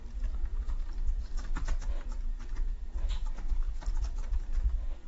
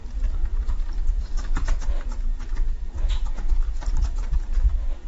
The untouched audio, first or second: first